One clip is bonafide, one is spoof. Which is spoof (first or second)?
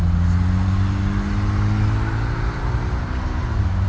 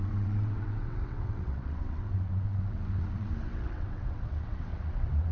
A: second